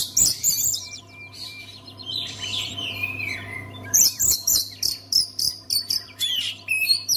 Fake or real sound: fake